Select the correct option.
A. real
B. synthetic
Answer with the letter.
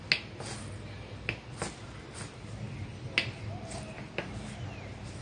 A